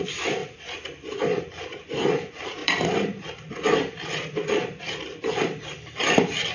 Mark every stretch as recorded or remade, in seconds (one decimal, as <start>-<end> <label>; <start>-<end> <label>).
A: 0.0-0.4 remade; 0.4-1.4 recorded; 1.4-6.5 remade